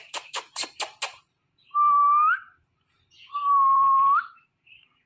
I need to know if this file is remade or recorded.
remade